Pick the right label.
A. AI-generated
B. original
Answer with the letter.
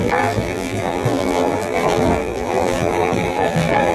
A